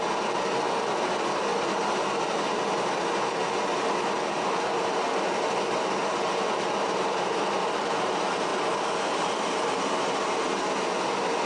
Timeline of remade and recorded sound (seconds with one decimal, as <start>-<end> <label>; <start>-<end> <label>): 0.0-1.5 recorded; 1.5-2.3 remade; 2.3-6.0 recorded; 6.0-7.8 remade; 7.8-8.5 recorded; 8.5-9.9 remade; 9.9-11.5 recorded